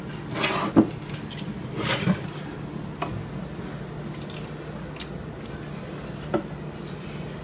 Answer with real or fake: real